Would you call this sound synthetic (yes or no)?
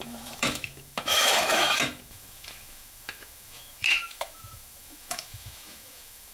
yes